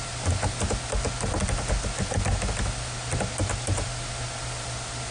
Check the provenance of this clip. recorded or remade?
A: recorded